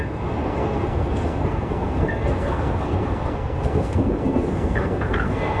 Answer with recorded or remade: remade